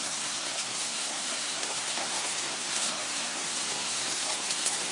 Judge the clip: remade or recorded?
remade